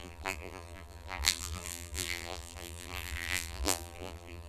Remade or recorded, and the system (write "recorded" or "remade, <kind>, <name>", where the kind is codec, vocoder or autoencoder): remade, vocoder, BigVGAN v2